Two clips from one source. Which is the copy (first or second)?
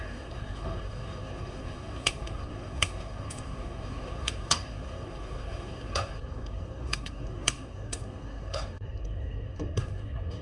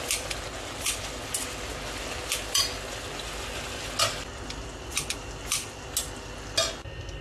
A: first